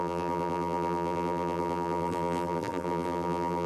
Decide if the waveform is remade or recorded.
remade